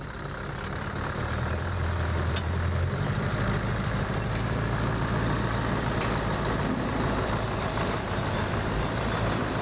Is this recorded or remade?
remade